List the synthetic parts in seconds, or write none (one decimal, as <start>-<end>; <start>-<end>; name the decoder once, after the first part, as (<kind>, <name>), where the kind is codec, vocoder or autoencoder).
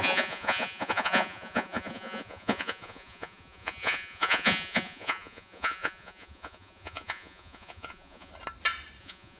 0.0-8.3 (vocoder, Vocos); 9.0-9.4